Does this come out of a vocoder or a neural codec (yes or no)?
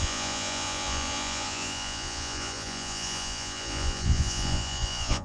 yes